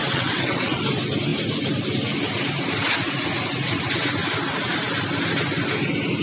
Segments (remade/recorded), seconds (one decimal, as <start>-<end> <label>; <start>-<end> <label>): 0.0-0.8 remade; 0.8-6.2 recorded